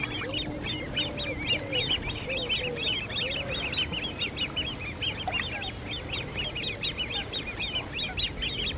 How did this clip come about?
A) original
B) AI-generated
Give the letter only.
A